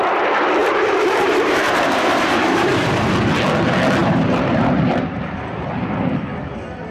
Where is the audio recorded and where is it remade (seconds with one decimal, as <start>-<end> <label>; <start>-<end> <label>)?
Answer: 0.0-0.6 recorded; 0.6-3.1 remade; 3.1-4.0 recorded; 4.0-5.5 remade; 5.5-6.9 recorded